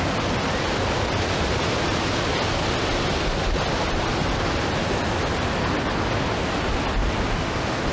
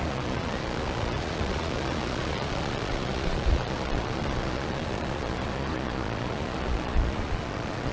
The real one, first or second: first